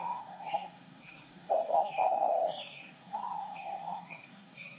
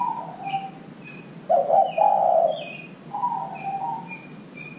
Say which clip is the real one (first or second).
second